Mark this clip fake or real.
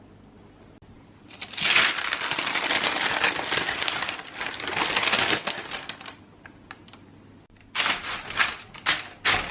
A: real